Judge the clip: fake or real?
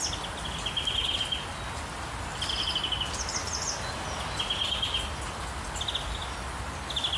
real